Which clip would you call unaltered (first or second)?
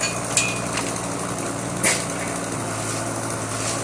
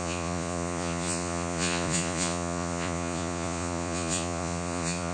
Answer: first